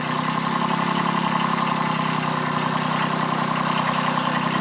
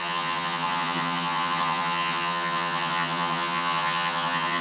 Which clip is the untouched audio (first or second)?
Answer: first